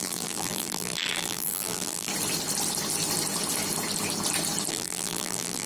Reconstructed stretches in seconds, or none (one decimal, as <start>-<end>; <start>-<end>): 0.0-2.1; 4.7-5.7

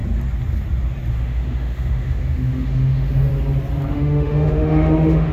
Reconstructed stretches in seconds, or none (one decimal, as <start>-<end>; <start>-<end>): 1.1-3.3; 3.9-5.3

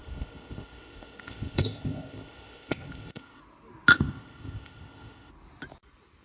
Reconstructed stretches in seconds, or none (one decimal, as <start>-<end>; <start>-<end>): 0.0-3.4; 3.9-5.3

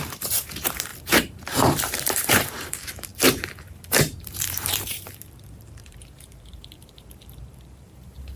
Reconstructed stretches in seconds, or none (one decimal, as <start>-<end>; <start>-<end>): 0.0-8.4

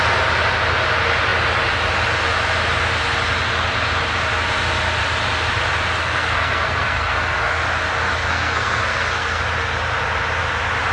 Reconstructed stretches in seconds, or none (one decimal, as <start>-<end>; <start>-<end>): 6.0-7.6; 8.2-9.4